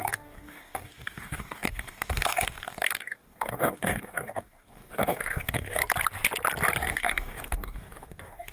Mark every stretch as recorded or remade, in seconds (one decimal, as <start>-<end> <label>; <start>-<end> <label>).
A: 0.0-5.8 remade; 5.8-6.9 recorded; 6.9-8.5 remade